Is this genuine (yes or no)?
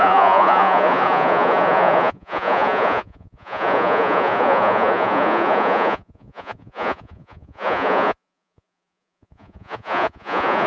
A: no